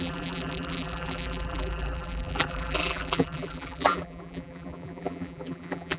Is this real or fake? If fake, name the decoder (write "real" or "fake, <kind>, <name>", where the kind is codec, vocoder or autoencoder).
fake, vocoder, BigVGAN v2